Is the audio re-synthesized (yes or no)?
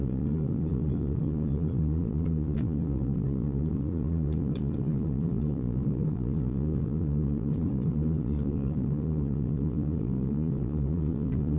yes